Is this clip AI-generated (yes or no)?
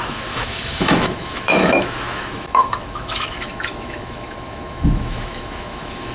yes